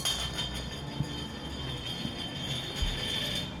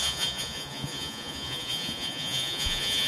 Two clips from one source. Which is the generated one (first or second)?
second